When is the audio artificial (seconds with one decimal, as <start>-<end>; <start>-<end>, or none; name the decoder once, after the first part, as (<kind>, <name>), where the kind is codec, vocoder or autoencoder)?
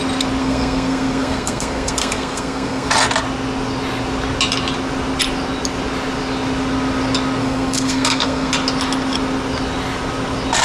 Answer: 0.4-2.9 (codec, SNAC); 7.4-8.5